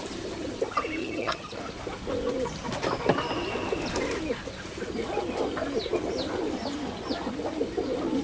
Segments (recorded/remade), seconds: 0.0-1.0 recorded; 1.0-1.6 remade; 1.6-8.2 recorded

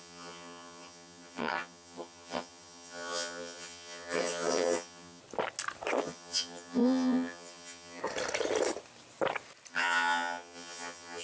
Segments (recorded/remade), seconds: 0.0-5.2 remade; 5.2-6.0 recorded; 6.0-8.0 remade; 8.0-9.7 recorded; 9.7-11.2 remade

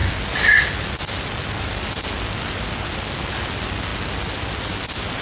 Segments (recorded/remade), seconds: 0.0-5.2 recorded

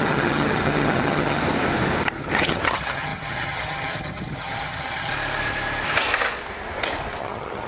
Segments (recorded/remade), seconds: 0.0-1.4 remade; 1.4-2.2 recorded; 2.2-5.1 remade; 5.1-7.2 recorded; 7.2-7.7 remade

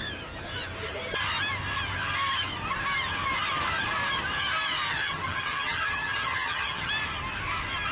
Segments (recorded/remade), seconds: 0.0-4.9 recorded; 4.9-6.9 remade; 6.9-7.9 recorded

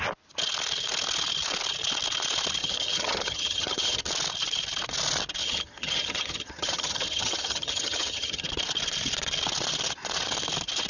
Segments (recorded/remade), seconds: 0.0-2.6 recorded; 2.6-4.1 remade; 4.1-5.4 recorded; 5.4-8.5 remade; 8.5-10.9 recorded

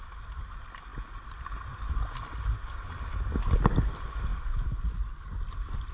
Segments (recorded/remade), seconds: 0.0-5.9 recorded